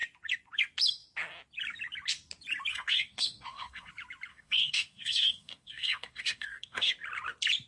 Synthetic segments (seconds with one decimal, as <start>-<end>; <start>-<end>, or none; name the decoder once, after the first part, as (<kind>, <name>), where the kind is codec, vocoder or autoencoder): 2.7-3.9 (codec, SNAC); 4.3-6.9